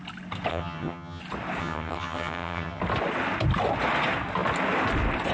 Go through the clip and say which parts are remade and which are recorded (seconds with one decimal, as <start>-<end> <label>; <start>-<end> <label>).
0.0-0.5 recorded; 0.5-1.2 remade; 1.2-1.6 recorded; 1.6-2.8 remade; 2.8-5.3 recorded